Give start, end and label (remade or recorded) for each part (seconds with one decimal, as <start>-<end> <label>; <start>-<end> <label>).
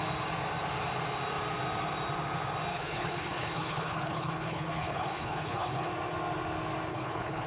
0.0-2.7 recorded; 2.7-5.9 remade; 5.9-6.9 recorded; 6.9-7.5 remade